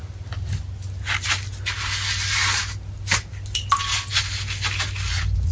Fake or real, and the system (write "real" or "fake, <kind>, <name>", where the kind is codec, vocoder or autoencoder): real